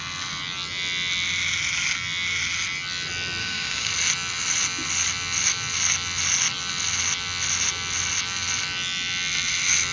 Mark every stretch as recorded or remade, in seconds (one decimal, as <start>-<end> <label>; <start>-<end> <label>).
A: 0.0-3.4 recorded; 3.4-3.9 remade; 3.9-9.9 recorded